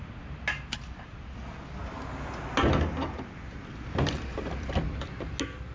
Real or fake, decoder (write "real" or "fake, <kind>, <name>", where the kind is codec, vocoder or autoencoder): real